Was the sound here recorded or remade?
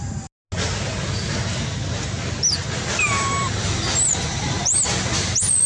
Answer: recorded